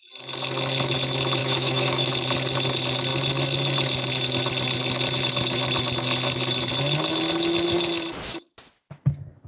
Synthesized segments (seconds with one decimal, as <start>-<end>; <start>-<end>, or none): 1.4-2.1